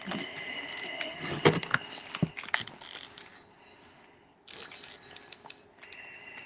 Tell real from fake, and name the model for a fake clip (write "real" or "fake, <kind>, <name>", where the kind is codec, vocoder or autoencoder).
real